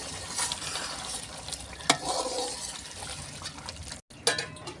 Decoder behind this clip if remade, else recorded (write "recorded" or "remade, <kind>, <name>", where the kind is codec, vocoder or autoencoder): recorded